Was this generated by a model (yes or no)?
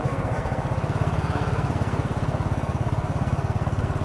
yes